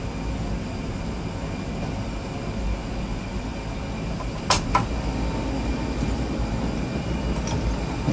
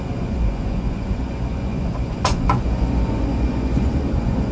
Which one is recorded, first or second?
first